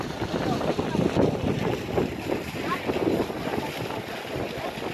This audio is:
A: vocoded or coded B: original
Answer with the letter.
B